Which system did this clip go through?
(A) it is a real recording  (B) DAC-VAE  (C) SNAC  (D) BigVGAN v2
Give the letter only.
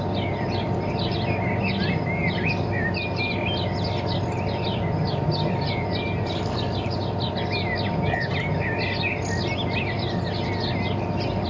A